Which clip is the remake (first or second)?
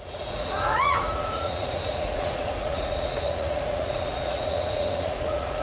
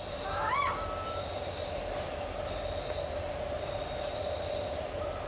first